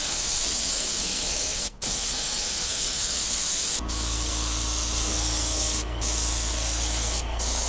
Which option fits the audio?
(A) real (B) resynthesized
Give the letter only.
B